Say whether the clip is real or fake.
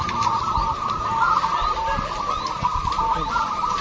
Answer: real